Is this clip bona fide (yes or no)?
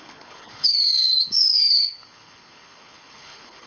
no